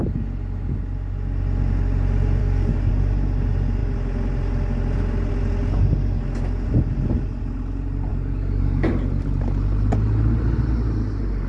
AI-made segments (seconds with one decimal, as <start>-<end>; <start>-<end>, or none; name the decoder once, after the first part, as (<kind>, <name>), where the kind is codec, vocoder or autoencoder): 2.4-2.9 (codec, DAC); 8.1-8.9